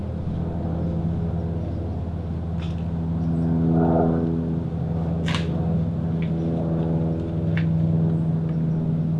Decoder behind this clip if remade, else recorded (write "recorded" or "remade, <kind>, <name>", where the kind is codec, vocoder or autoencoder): recorded